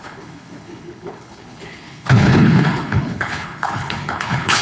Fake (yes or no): yes